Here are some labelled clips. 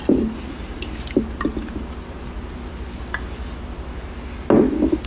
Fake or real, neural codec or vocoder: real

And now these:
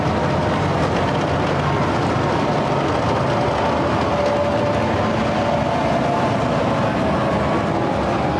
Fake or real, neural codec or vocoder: real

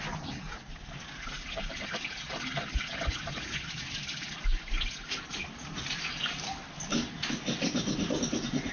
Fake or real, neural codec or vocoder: real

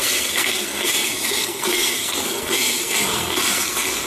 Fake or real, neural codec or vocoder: fake, codec, SNAC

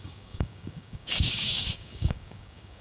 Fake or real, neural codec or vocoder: fake, codec, DAC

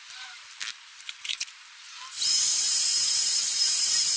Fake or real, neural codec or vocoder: fake, vocoder, BigVGAN v2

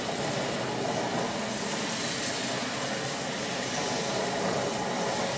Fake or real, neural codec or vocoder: real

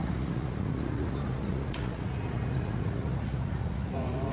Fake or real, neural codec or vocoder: fake, vocoder, Vocos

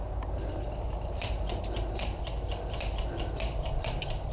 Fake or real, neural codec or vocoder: real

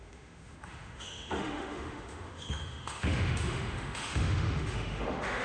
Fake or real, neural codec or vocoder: fake, autoencoder, DAC-VAE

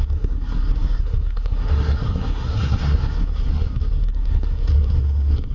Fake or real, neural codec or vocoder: fake, codec, SNAC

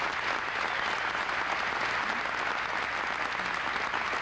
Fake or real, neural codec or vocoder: real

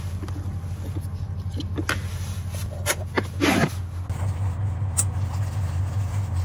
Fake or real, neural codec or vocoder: real